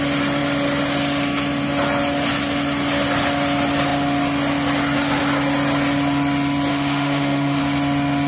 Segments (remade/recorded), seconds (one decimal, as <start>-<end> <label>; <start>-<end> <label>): 0.0-6.7 recorded; 6.7-7.6 remade; 7.6-8.3 recorded

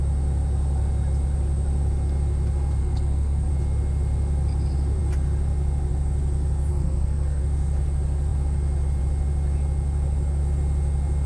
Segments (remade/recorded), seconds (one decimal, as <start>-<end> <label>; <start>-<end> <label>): 0.0-2.8 recorded; 2.8-3.5 remade; 3.5-6.7 recorded; 6.7-7.4 remade; 7.4-11.3 recorded